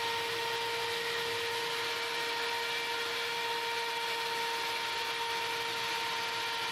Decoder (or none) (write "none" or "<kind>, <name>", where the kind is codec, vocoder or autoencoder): none